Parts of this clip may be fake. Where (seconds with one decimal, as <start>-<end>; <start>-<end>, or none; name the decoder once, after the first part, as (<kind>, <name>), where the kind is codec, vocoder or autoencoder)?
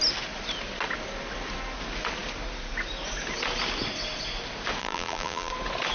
4.8-5.5 (vocoder, BigVGAN v2)